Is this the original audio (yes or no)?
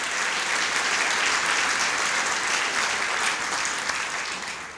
yes